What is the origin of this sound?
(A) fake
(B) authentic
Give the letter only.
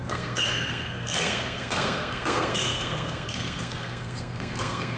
A